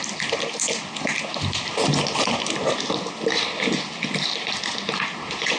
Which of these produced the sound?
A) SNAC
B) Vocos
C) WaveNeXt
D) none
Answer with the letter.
D